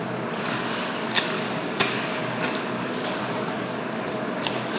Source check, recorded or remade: remade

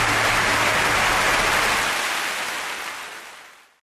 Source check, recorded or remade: recorded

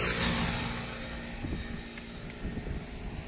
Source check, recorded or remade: recorded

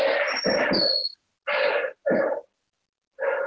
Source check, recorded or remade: recorded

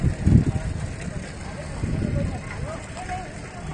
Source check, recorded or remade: recorded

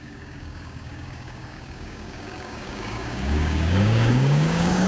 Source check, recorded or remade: remade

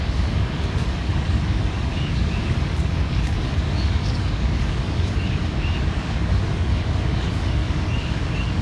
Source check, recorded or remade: remade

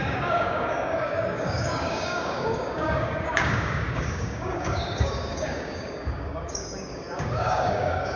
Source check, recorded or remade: remade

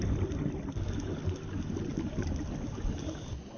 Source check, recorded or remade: recorded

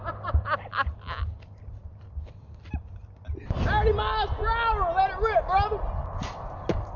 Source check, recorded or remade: recorded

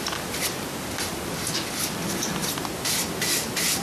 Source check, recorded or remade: recorded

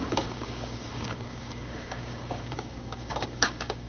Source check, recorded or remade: remade